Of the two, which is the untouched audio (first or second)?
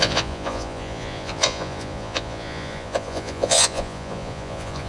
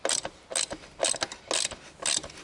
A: second